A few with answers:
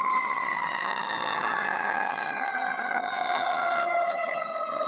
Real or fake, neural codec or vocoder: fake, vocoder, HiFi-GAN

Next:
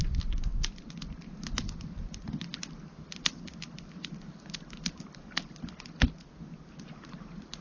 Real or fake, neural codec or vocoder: real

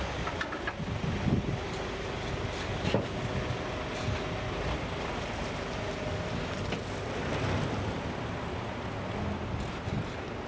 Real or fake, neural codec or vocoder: real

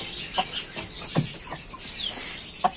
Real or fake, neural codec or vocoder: real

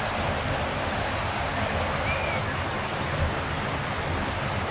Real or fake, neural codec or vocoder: real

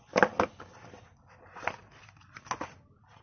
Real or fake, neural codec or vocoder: real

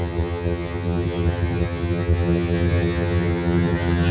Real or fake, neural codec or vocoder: fake, vocoder, HiFi-GAN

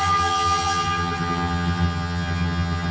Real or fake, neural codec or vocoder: fake, vocoder, HiFi-GAN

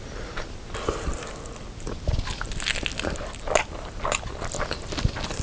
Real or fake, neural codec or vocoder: real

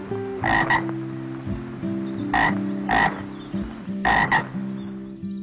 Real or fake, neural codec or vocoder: real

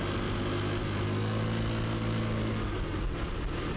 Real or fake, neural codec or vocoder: real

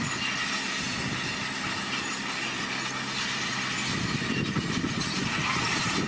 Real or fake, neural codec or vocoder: real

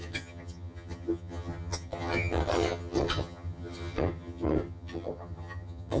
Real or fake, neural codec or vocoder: fake, vocoder, HiFi-GAN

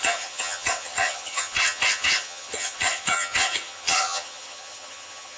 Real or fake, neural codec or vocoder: fake, vocoder, HiFi-GAN